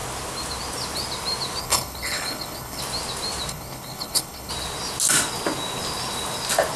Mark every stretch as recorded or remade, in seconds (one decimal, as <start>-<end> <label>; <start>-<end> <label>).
0.0-1.6 recorded; 1.6-2.8 remade; 2.8-3.5 recorded; 3.5-4.5 remade; 4.5-6.8 recorded